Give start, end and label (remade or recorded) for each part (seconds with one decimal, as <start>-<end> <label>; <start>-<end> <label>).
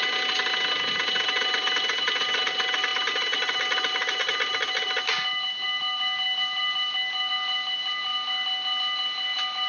0.0-9.7 recorded